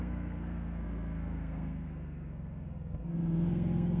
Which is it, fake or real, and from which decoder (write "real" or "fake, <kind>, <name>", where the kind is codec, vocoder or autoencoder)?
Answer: fake, codec, SNAC